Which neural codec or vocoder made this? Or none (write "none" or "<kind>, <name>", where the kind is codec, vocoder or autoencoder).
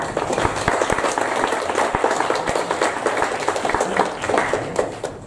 none